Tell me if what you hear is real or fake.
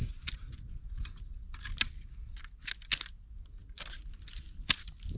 real